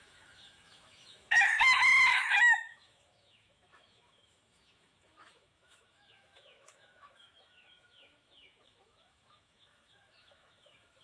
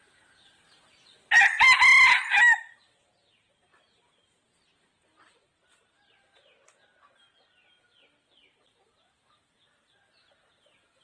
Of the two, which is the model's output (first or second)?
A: first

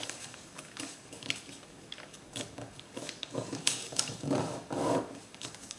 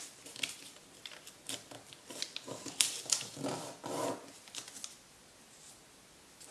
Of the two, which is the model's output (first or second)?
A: first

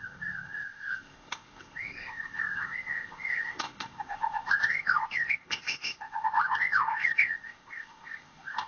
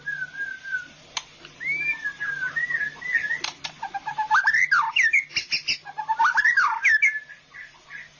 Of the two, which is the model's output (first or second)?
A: first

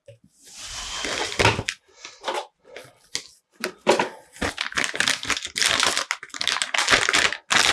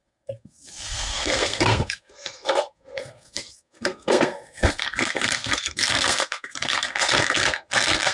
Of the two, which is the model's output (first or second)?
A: second